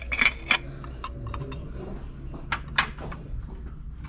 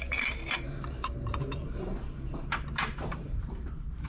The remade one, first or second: second